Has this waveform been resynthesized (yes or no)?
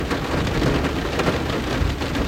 no